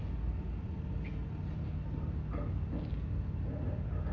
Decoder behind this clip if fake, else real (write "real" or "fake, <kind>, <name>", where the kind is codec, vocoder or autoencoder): real